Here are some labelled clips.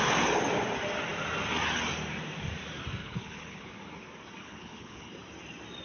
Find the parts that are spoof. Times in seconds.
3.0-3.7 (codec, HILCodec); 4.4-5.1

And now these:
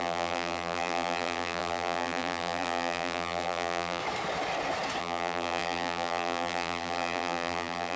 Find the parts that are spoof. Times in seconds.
0.0-4.0 (vocoder, BigVGAN v2); 5.0-8.0